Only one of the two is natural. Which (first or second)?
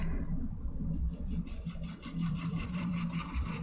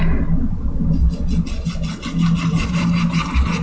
second